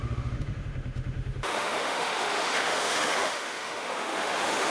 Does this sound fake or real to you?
fake